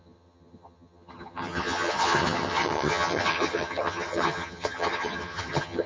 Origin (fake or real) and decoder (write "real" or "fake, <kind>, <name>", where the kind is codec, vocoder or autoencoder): fake, vocoder, HiFi-GAN